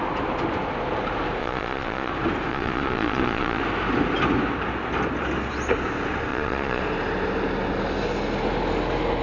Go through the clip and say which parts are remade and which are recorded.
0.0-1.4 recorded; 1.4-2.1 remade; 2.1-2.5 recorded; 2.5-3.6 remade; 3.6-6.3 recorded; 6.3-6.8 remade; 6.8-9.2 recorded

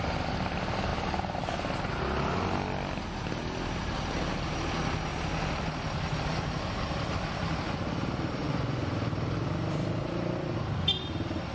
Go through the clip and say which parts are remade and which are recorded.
0.0-8.4 recorded; 8.4-8.9 remade; 8.9-11.5 recorded

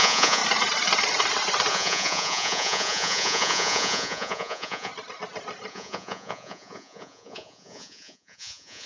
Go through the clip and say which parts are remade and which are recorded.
0.0-0.4 remade; 0.4-1.7 recorded; 1.7-4.9 remade; 4.9-5.7 recorded; 5.7-8.9 remade

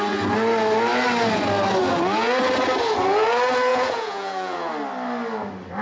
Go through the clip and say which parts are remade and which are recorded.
0.0-3.7 recorded; 3.7-4.7 remade; 4.7-5.8 recorded

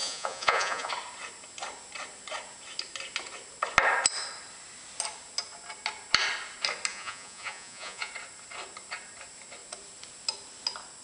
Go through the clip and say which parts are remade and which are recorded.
0.0-0.9 remade; 0.9-6.9 recorded; 6.9-8.1 remade; 8.1-11.0 recorded

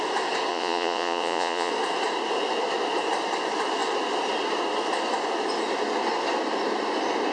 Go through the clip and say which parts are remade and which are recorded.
0.0-0.5 recorded; 0.5-1.7 remade; 1.7-7.3 recorded

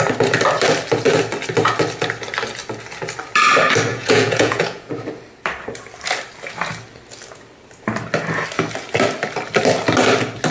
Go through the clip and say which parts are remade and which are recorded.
0.0-3.9 recorded; 3.9-4.9 remade; 4.9-10.5 recorded

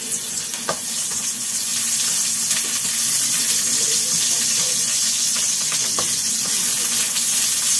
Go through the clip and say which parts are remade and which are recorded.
0.0-1.7 remade; 1.7-4.4 recorded; 4.4-7.8 remade